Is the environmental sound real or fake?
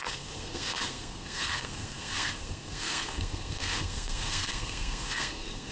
fake